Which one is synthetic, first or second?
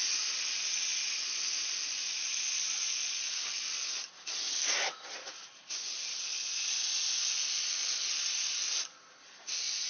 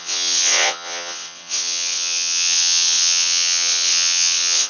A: second